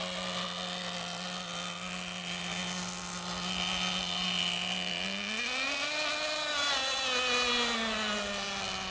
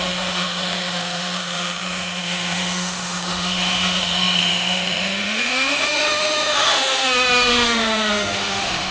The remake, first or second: second